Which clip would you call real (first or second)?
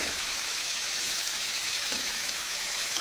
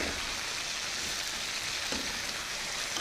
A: second